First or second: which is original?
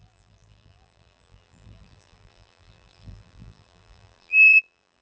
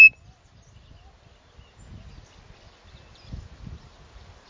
second